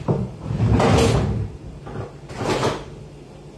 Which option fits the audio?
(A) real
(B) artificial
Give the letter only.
A